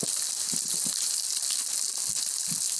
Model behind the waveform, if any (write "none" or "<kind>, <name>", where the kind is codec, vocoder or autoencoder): none